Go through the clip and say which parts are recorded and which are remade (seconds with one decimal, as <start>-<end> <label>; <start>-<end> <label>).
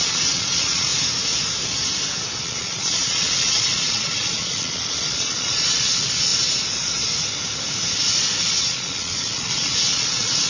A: 0.0-0.9 remade; 0.9-2.4 recorded; 2.4-6.3 remade; 6.3-8.5 recorded; 8.5-10.5 remade